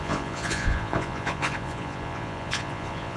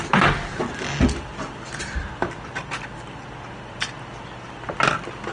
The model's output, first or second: first